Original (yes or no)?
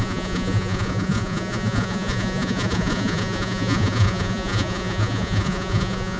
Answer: no